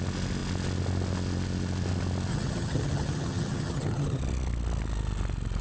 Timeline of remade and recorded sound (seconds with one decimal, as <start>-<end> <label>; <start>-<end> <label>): 0.0-2.3 recorded; 2.3-4.2 remade; 4.2-5.6 recorded